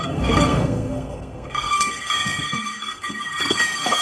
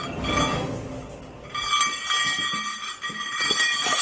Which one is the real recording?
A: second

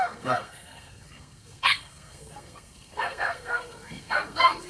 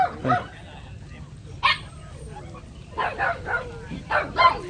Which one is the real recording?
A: second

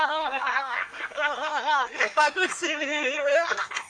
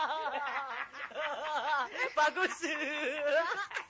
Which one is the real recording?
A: second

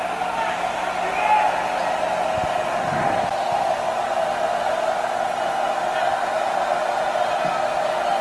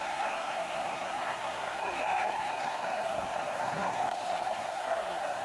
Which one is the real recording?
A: first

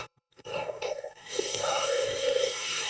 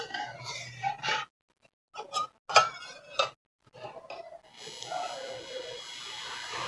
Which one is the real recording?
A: second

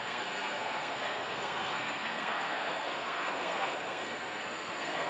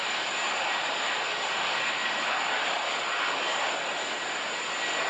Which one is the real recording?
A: second